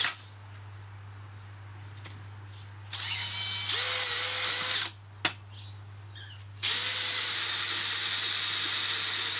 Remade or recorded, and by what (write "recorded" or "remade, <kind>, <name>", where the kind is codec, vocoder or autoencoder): recorded